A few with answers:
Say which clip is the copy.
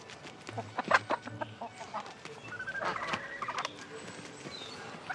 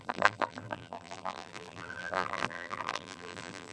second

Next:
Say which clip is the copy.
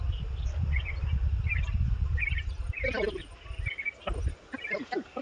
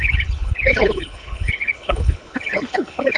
second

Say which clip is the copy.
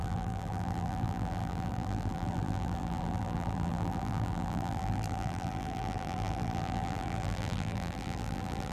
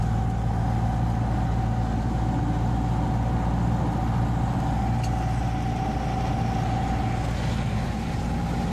first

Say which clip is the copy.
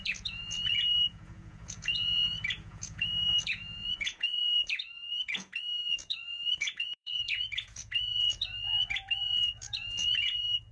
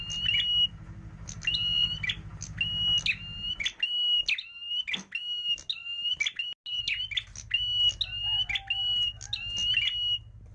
first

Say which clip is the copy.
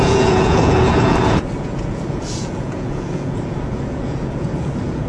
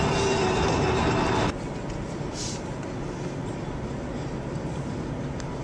first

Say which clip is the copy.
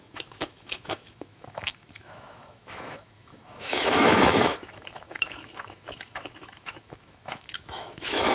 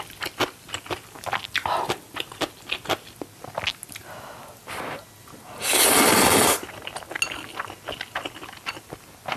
first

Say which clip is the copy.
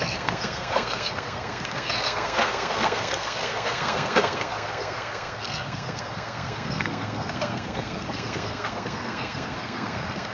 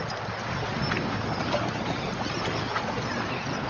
first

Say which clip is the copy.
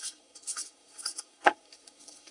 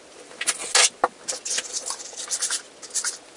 first